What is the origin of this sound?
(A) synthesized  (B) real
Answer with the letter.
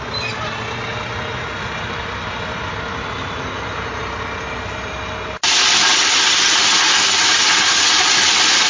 B